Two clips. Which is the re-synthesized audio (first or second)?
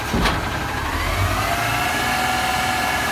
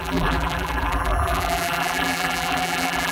second